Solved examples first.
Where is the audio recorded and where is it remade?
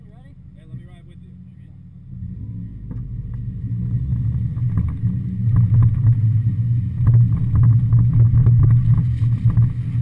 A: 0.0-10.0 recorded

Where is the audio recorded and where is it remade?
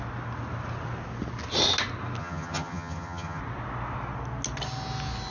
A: 0.0-2.2 recorded; 2.2-3.4 remade; 3.4-5.3 recorded